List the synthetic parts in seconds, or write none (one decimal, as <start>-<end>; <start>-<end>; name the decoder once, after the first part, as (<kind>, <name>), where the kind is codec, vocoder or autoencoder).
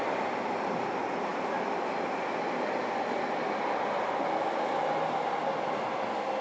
none